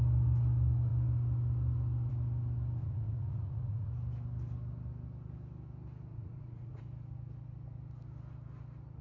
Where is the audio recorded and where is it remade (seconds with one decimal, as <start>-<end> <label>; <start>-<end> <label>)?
0.0-2.8 recorded; 2.8-3.9 remade; 3.9-6.1 recorded; 6.1-6.8 remade; 6.8-9.0 recorded